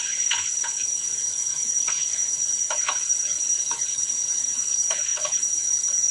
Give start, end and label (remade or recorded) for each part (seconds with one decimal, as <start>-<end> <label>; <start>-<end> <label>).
0.0-6.1 remade